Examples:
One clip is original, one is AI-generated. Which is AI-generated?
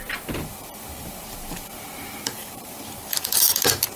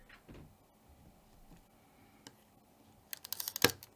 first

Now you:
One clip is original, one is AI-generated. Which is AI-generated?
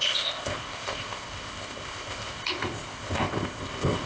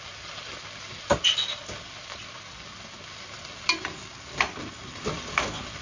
first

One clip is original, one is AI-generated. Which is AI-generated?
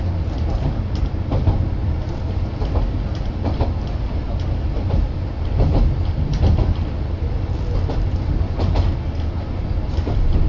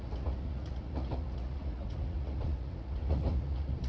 second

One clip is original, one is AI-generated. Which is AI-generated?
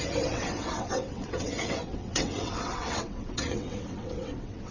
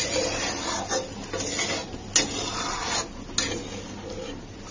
first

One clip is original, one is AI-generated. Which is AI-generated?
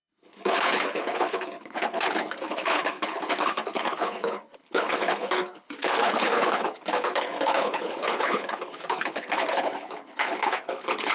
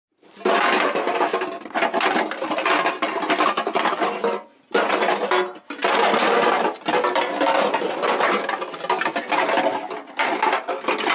first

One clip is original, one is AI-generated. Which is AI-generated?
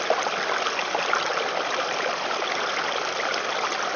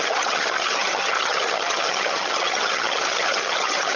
second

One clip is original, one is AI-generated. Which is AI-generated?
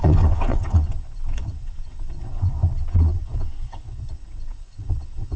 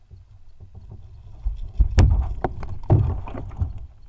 first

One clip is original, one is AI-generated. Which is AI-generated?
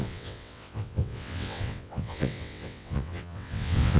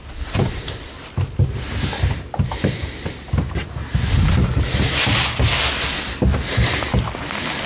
first